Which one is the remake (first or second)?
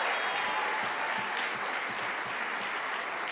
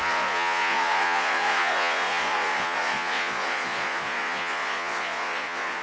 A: second